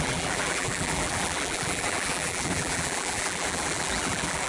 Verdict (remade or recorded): remade